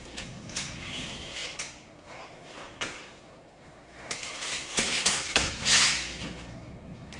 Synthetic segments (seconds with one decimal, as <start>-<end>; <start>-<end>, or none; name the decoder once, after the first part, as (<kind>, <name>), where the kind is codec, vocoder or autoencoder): 0.0-7.2 (codec, SNAC)